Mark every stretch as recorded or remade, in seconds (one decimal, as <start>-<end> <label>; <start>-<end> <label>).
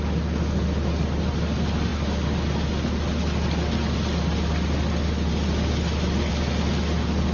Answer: 0.0-7.3 recorded